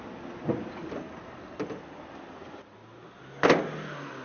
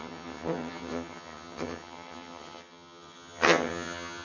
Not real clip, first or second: second